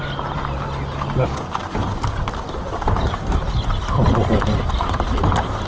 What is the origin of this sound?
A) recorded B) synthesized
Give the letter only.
A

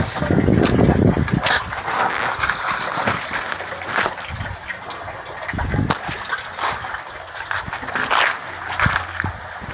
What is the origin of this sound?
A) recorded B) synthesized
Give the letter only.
A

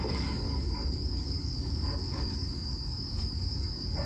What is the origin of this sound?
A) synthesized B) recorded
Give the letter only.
A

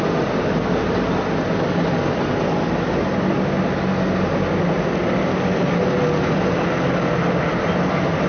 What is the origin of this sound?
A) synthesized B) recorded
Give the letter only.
B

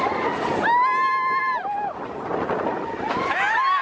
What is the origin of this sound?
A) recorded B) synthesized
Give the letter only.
A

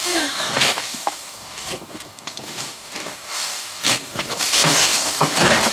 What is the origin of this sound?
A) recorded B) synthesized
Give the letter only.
B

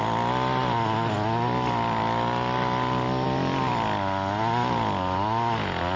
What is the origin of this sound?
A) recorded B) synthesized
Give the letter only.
A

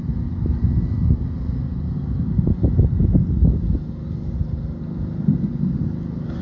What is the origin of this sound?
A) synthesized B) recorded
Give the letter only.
B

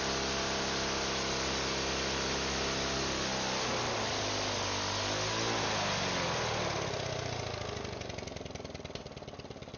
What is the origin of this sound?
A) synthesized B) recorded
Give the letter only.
B